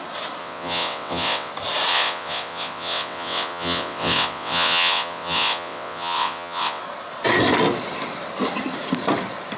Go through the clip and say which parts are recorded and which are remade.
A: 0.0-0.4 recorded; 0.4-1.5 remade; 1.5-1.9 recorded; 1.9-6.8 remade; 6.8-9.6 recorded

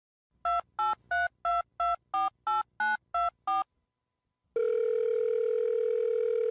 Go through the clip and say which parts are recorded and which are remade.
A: 0.0-6.5 recorded

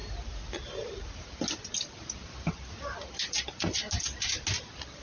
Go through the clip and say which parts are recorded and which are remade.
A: 0.0-5.0 recorded

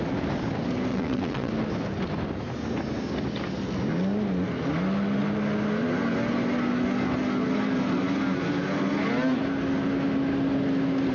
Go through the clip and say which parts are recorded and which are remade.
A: 0.0-0.9 recorded; 0.9-1.5 remade; 1.5-11.1 recorded

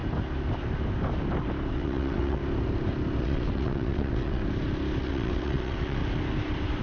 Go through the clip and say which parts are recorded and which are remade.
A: 0.0-1.7 recorded; 1.7-2.4 remade; 2.4-3.2 recorded; 3.2-4.4 remade; 4.4-5.0 recorded; 5.0-6.0 remade; 6.0-6.8 recorded

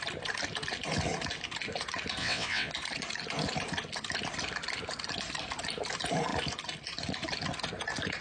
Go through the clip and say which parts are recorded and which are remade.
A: 0.0-2.2 recorded; 2.2-2.7 remade; 2.7-8.2 recorded